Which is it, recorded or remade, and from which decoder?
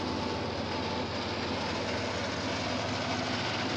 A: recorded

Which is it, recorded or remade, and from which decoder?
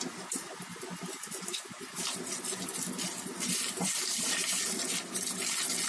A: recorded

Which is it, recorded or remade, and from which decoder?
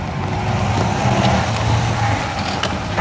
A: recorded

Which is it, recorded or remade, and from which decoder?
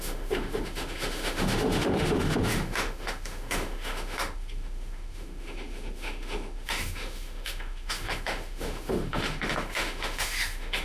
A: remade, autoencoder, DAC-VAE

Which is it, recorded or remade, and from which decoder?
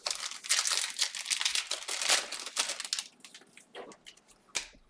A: recorded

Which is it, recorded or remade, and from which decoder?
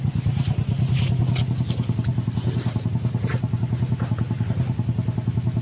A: recorded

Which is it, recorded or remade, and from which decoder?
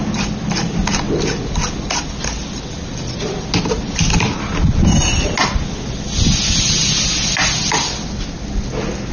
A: recorded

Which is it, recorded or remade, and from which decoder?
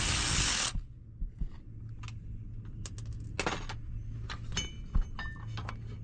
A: recorded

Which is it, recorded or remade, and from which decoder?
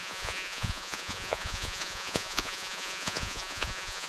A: remade, vocoder, Vocos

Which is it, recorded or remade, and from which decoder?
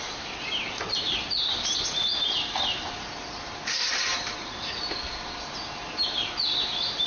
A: recorded